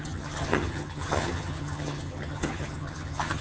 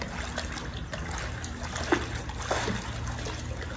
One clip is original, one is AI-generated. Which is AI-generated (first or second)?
first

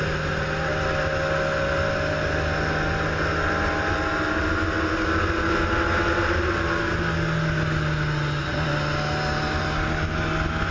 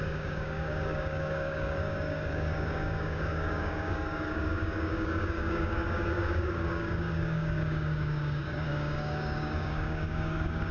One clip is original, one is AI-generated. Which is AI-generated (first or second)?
second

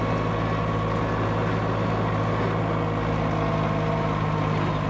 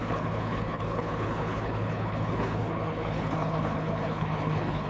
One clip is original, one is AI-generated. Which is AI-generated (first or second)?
second